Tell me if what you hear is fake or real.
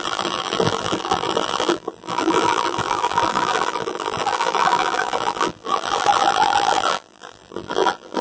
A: fake